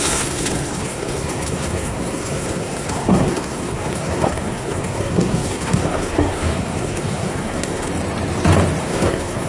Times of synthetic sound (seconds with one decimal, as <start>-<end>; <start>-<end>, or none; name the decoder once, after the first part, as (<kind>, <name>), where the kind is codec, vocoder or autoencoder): 0.0-7.9 (codec, SNAC); 8.8-9.5